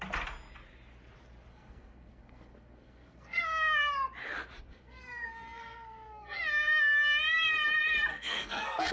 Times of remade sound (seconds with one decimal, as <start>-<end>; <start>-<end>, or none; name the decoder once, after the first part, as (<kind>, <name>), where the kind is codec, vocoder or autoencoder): 1.5-3.4 (codec, SNAC); 4.7-6.4; 8.1-8.9